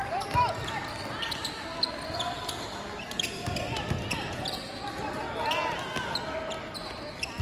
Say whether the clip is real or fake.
real